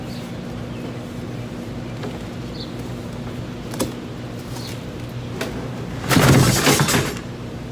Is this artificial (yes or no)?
no